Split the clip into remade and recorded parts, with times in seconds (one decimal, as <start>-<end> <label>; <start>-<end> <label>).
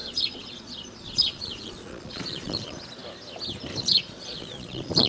0.0-3.0 remade; 3.0-3.8 recorded; 3.8-5.1 remade